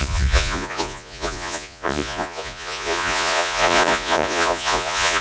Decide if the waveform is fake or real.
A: fake